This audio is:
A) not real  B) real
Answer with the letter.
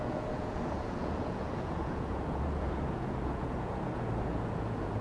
A